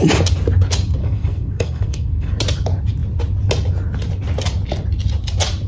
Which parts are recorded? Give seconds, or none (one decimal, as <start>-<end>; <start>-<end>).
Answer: 0.0-1.0; 2.3-5.7

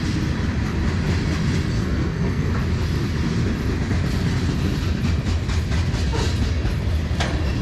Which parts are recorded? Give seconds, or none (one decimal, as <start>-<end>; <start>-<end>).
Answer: 0.0-1.7; 2.5-7.6

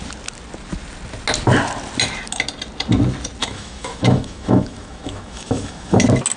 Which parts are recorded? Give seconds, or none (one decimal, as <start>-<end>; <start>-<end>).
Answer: 0.0-3.4; 6.0-6.4